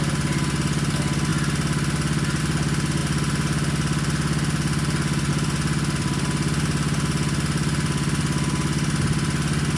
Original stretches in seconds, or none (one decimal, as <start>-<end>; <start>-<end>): 0.0-9.8